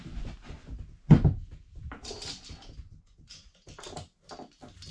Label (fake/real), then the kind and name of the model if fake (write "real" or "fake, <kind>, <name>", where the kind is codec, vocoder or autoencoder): real